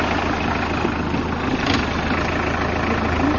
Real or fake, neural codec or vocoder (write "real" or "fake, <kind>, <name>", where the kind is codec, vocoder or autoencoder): real